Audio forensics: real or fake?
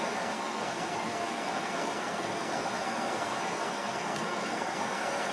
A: fake